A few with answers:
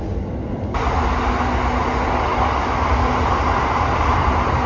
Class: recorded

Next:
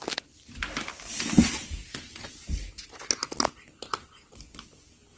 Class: recorded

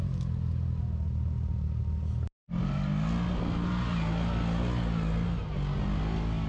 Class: recorded